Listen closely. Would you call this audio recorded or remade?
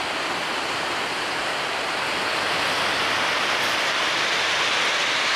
recorded